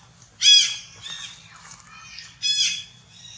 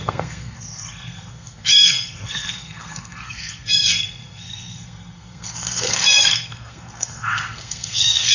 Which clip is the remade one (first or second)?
second